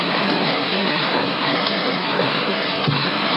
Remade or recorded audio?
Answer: remade